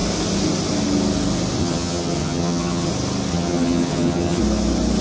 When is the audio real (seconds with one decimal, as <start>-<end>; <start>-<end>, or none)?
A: 0.0-1.6; 2.9-3.3; 4.4-5.0